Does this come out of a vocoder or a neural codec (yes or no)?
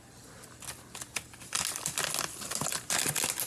no